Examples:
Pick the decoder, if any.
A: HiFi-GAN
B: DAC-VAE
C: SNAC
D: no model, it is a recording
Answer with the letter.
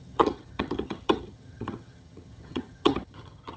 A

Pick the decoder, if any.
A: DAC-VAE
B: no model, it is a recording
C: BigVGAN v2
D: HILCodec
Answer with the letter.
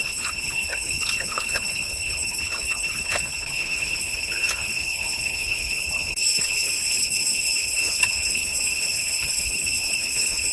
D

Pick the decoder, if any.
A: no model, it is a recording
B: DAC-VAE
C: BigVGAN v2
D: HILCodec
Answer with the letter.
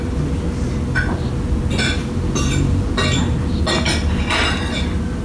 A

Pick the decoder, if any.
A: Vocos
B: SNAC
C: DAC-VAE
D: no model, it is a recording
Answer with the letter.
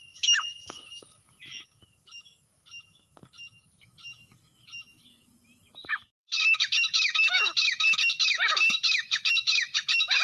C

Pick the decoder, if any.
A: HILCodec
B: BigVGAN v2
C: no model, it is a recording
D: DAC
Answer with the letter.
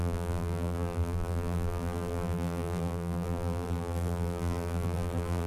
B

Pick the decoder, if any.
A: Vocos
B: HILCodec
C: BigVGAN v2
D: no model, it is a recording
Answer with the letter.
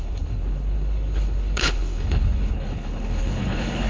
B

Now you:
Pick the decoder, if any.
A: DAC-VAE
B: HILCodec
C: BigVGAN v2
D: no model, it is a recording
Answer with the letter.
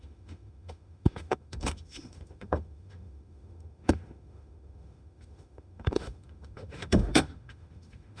A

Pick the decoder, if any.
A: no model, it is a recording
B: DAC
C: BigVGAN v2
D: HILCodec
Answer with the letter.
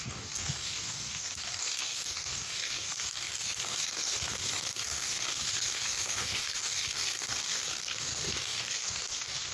B